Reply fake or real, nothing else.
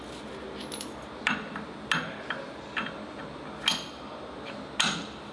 real